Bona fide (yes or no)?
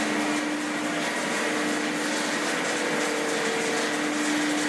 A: yes